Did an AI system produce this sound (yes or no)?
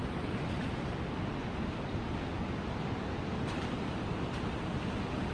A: no